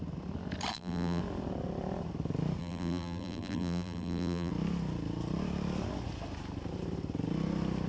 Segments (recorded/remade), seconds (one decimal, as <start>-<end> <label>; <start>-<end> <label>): 0.0-0.7 recorded; 0.7-1.2 remade; 1.2-2.6 recorded; 2.6-4.5 remade; 4.5-7.9 recorded